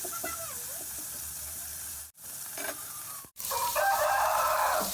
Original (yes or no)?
no